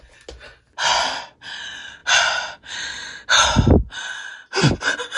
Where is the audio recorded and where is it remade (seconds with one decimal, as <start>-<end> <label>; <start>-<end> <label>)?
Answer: 0.0-5.2 recorded